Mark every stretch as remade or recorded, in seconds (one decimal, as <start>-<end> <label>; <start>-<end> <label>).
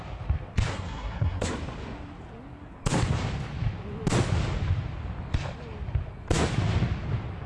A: 0.0-0.7 recorded; 0.7-1.5 remade; 1.5-7.5 recorded